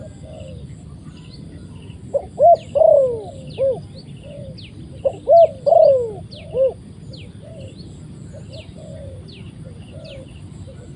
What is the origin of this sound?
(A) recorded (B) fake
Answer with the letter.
A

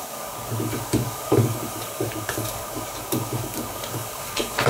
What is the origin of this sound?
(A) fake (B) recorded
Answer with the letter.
A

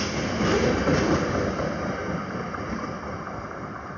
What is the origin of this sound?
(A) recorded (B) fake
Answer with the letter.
A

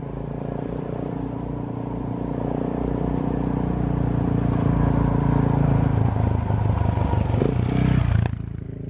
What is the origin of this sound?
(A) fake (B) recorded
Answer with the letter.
B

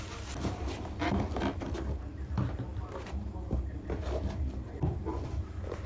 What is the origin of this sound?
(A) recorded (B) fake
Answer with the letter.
A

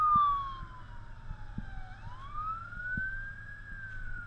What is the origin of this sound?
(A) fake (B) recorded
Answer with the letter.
B